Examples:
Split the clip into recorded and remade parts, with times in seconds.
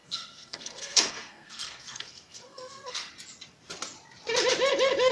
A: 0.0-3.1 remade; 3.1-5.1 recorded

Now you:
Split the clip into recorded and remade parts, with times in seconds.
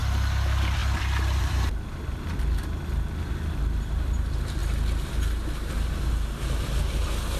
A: 0.0-4.6 remade; 4.6-6.1 recorded; 6.1-7.4 remade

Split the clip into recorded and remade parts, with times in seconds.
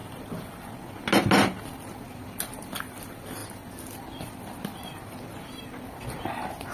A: 0.0-6.7 recorded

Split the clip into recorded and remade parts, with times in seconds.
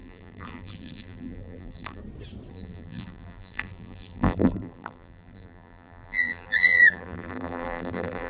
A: 0.0-2.0 remade; 2.0-2.5 recorded; 2.5-8.3 remade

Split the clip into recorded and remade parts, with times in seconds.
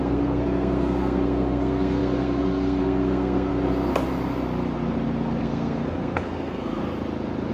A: 0.0-3.5 remade; 3.5-5.4 recorded; 5.4-6.8 remade; 6.8-7.5 recorded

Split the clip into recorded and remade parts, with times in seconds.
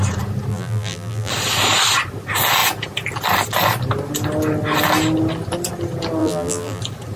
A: 0.0-0.5 recorded; 0.5-1.3 remade; 1.3-6.2 recorded; 6.2-6.8 remade; 6.8-7.2 recorded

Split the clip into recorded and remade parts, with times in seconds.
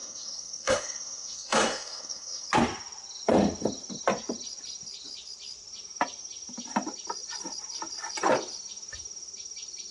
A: 0.0-2.5 remade; 2.5-9.9 recorded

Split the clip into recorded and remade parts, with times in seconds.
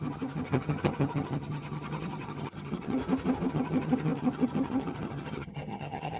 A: 0.0-3.0 remade; 3.0-3.5 recorded; 3.5-6.2 remade